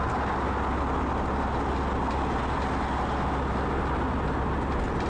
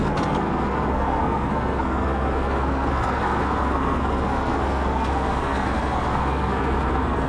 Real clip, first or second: first